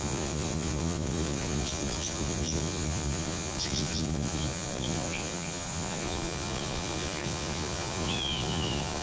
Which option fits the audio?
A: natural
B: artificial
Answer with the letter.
B